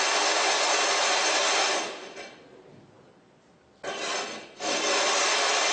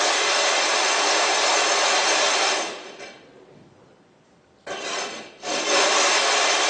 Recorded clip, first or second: first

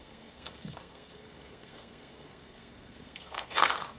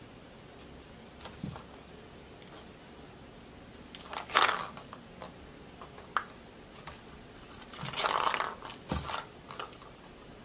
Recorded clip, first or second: second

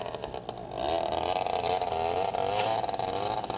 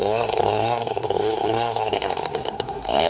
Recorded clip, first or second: first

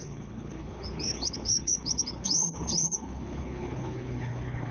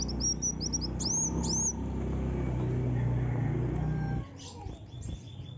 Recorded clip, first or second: second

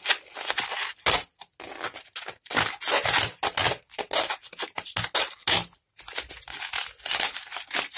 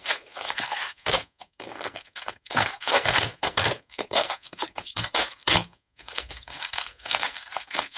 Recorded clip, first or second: first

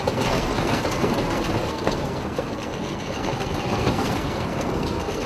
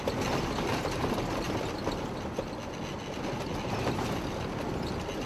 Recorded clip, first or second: second